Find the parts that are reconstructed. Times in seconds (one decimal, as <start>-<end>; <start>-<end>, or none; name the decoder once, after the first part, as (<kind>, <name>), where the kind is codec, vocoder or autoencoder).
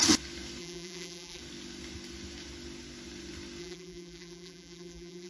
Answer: 0.6-1.4 (vocoder, BigVGAN v2); 3.6-5.3